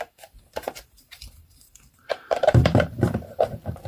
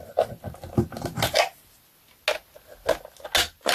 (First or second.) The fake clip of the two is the first